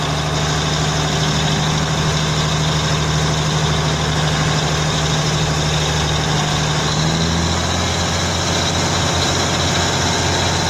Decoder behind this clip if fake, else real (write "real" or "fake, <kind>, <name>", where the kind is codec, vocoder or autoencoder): real